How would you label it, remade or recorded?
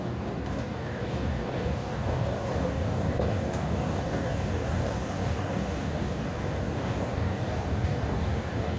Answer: remade